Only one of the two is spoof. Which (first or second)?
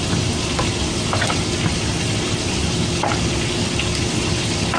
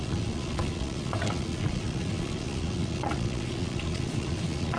second